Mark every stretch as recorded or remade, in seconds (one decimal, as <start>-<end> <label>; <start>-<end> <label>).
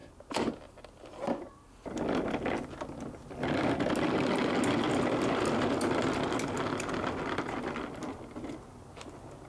0.0-9.5 recorded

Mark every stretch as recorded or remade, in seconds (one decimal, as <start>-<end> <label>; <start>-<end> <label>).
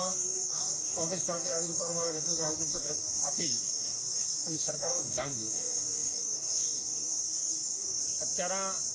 0.0-8.0 remade; 8.0-8.9 recorded